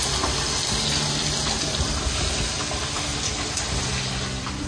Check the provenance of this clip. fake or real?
real